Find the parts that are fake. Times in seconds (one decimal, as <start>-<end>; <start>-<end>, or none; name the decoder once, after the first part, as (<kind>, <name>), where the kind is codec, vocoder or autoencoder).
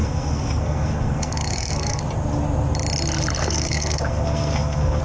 0.0-2.0 (codec, SNAC); 3.4-5.0